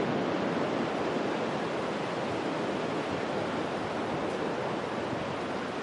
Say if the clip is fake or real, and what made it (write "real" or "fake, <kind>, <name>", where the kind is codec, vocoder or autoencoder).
real